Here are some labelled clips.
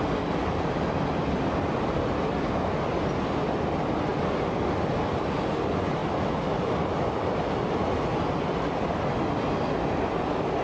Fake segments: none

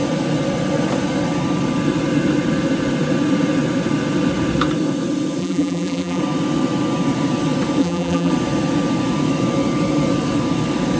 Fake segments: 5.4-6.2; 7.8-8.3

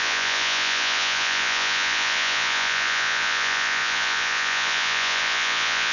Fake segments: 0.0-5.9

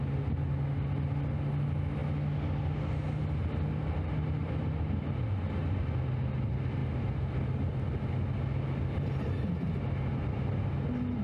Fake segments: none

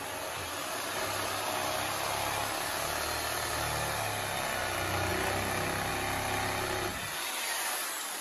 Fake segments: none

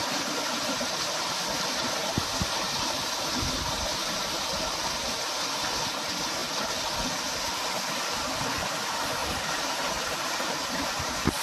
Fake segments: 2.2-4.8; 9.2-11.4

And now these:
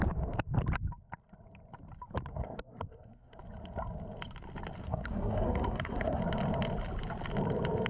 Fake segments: 2.3-3.4; 4.8-6.2